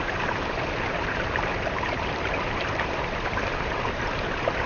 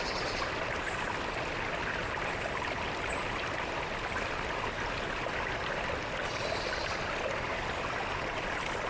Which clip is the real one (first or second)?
second